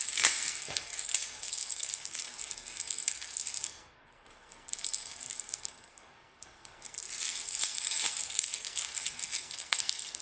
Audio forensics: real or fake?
fake